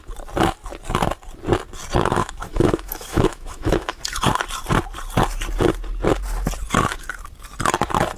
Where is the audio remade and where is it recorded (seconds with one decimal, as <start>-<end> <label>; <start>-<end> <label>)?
0.0-2.2 recorded; 2.2-4.0 remade; 4.0-8.2 recorded